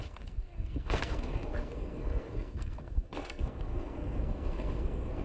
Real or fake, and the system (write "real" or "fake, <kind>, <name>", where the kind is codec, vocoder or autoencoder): fake, codec, SNAC